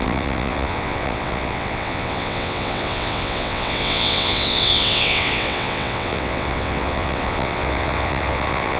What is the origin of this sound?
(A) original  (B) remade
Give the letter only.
B